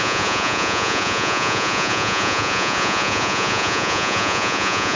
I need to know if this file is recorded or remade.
remade